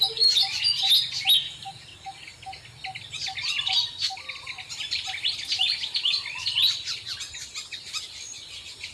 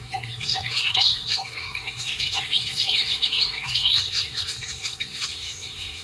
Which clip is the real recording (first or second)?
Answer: first